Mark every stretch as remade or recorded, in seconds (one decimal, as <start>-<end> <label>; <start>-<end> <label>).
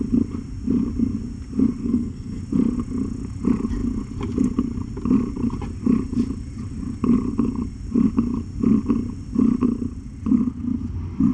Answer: 0.0-1.8 recorded; 1.8-2.4 remade; 2.4-11.3 recorded